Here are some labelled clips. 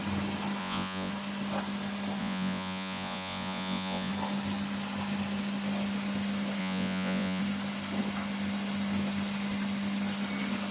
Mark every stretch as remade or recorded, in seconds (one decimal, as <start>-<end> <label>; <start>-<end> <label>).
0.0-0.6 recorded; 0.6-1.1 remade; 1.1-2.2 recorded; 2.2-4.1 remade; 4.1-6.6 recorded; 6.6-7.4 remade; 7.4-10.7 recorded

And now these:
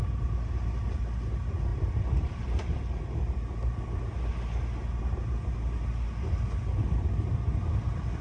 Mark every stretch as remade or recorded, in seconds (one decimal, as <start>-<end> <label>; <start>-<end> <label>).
0.0-1.7 recorded; 1.7-4.0 remade; 4.0-8.2 recorded

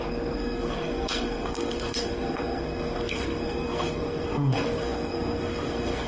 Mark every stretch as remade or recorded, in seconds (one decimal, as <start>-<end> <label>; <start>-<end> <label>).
0.0-6.1 remade

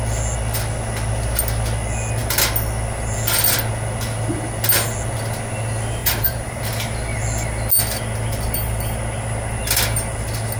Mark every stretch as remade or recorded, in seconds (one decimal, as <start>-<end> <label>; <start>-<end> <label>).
0.0-6.0 recorded; 6.0-6.6 remade; 6.6-10.6 recorded

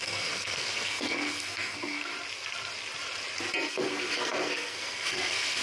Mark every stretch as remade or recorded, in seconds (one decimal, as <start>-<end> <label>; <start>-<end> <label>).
0.0-2.1 remade; 2.1-3.7 recorded; 3.7-5.6 remade

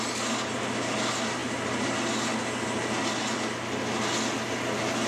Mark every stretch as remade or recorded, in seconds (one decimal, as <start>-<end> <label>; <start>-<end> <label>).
0.0-5.1 recorded

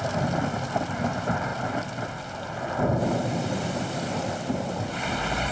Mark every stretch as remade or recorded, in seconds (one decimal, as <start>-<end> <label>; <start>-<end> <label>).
0.0-5.5 recorded

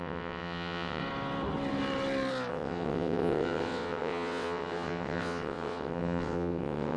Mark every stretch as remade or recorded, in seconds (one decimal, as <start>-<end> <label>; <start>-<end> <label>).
0.0-1.0 remade; 1.0-2.5 recorded; 2.5-7.0 remade